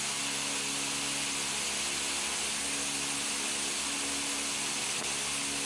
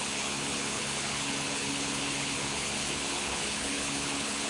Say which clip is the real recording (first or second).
first